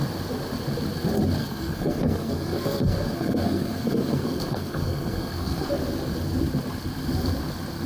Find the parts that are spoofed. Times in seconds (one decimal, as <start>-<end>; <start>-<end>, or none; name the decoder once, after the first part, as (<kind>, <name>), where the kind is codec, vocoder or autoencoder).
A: 1.4-5.7 (codec, SNAC)

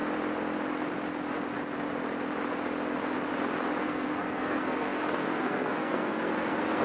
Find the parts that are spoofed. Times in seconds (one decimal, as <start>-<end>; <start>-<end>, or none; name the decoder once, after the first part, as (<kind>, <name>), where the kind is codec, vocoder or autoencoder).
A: 3.8-6.8 (codec, SNAC)

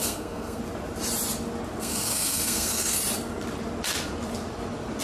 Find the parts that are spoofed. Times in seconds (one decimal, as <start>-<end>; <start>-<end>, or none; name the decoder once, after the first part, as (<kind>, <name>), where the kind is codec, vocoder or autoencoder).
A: 0.0-0.6 (codec, SNAC); 1.8-3.0

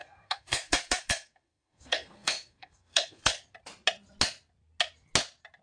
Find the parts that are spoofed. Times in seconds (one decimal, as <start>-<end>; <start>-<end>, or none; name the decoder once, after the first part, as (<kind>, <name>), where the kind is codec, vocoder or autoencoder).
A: 0.0-3.4 (codec, SNAC)

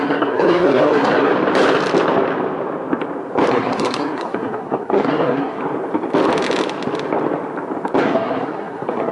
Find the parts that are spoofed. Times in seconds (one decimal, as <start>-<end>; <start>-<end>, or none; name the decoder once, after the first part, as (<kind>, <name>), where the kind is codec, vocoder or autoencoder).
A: 0.0-1.3 (codec, SNAC); 3.5-5.6; 8.0-9.1